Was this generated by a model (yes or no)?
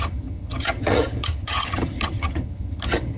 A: yes